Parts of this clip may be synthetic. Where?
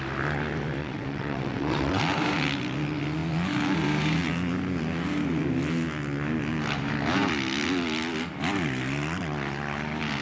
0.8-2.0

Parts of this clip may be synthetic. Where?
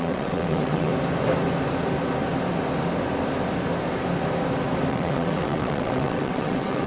0.0-0.9; 4.9-6.9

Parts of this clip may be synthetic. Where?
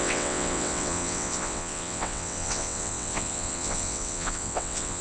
0.0-5.0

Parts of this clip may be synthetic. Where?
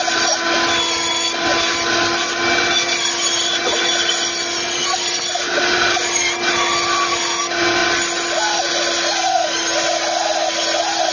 none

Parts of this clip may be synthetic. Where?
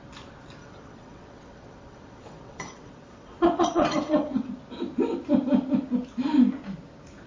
0.6-4.5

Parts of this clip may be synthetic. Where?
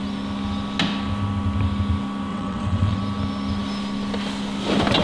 2.3-3.0